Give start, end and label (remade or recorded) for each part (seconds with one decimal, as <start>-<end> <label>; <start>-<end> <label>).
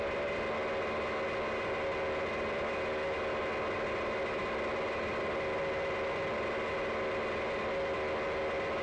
0.0-8.8 recorded